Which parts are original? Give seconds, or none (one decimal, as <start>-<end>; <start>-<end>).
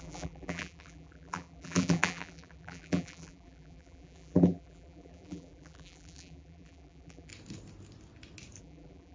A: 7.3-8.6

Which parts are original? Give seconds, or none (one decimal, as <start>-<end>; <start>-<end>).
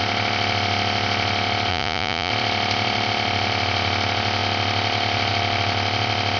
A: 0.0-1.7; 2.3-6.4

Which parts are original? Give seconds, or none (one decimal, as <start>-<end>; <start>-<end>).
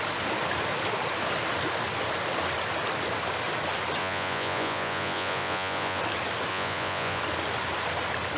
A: 0.0-4.0; 6.0-6.5; 7.2-8.4